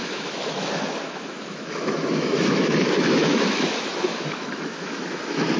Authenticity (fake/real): fake